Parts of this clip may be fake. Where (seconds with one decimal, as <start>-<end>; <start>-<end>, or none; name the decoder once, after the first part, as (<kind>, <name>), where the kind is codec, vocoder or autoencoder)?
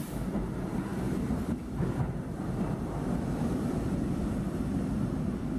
none